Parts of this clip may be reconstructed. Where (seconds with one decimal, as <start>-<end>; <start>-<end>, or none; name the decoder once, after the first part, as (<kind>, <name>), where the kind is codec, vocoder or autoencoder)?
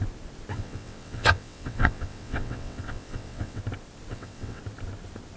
0.5-3.6 (vocoder, WaveNeXt); 4.1-4.6